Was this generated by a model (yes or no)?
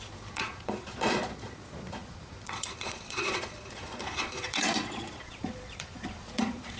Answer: yes